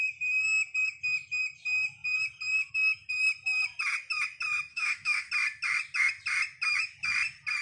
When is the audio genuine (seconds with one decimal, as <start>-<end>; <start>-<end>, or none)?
0.0-4.7; 5.3-7.6

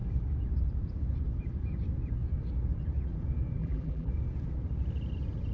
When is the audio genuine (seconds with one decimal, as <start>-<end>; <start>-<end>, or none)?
0.0-3.6; 4.1-5.5

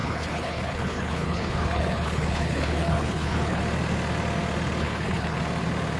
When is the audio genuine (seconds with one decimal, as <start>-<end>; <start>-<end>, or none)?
3.6-4.8; 5.4-6.0

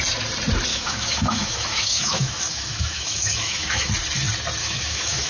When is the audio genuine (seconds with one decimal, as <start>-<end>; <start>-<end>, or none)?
0.0-0.7; 3.9-4.6

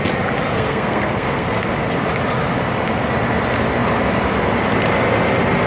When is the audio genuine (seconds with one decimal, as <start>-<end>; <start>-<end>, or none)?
0.0-0.5; 1.7-5.7

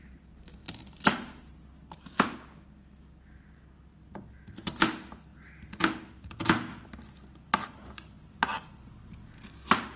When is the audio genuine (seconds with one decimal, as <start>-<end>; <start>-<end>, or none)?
0.0-10.0

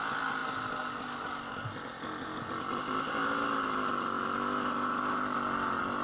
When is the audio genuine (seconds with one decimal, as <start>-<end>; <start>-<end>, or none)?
0.0-6.0

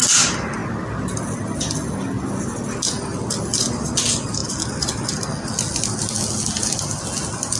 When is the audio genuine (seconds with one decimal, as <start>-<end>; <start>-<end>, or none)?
0.0-7.6